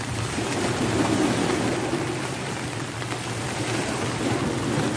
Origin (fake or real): real